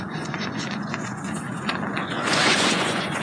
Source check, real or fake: fake